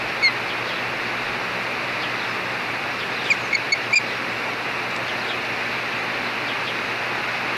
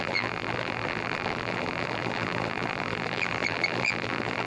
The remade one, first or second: second